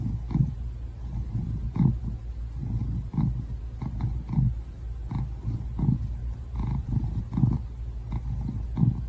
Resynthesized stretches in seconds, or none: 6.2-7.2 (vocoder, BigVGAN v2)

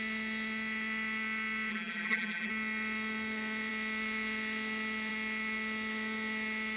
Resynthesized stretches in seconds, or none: 1.7-2.5 (vocoder, BigVGAN v2)